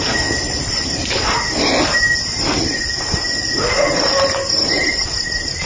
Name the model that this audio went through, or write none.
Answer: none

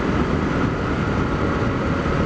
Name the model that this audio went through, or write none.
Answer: none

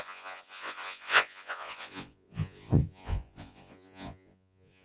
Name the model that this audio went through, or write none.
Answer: vocoder, Vocos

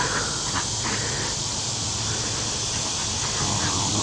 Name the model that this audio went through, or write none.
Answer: none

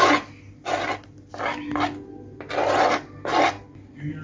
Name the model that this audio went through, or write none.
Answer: none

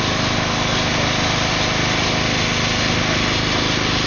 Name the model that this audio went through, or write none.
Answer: none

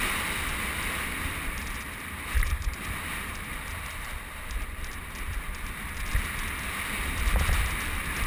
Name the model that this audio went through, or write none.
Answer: none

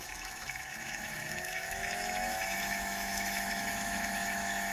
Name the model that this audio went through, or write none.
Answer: autoencoder, DAC-VAE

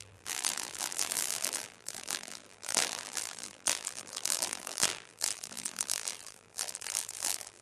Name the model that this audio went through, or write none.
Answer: vocoder, BigVGAN v2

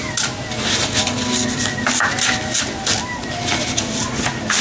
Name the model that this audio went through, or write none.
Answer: none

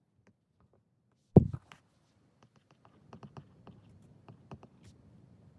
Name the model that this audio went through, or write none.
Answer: none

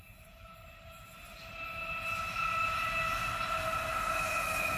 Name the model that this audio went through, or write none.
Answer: none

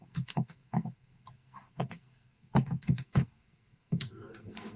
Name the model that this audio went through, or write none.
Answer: codec, SNAC